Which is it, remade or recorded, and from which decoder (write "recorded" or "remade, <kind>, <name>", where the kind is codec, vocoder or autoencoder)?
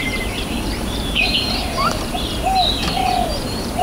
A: remade, vocoder, BigVGAN v2